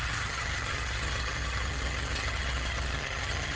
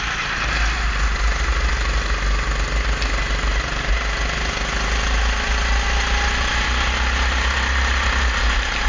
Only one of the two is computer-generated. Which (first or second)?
first